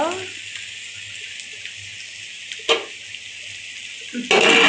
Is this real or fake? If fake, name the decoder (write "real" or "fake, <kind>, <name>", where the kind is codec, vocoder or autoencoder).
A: real